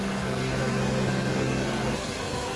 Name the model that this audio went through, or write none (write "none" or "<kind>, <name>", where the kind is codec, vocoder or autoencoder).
codec, SNAC